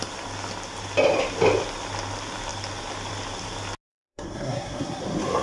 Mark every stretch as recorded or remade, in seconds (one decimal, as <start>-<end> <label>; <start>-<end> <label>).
0.0-3.9 recorded; 3.9-5.0 remade; 5.0-5.4 recorded